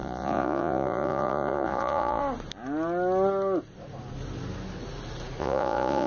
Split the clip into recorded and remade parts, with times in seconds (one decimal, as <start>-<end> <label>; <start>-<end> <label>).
0.0-2.2 remade; 2.2-5.4 recorded; 5.4-6.1 remade